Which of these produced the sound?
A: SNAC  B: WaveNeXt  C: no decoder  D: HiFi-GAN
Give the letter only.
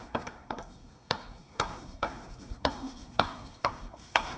A